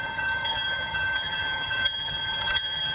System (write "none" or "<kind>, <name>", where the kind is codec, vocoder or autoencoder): vocoder, HiFi-GAN